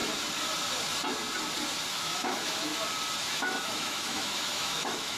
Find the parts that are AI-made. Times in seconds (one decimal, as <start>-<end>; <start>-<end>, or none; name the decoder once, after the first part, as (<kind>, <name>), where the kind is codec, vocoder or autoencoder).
1.9-2.7 (autoencoder, DAC-VAE); 3.2-5.2